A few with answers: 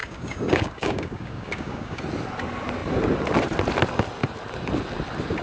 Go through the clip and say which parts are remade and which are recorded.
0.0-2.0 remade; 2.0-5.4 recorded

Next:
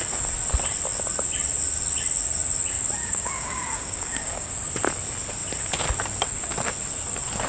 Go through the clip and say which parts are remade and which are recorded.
0.0-3.0 recorded; 3.0-4.5 remade; 4.5-7.5 recorded